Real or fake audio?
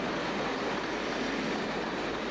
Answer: real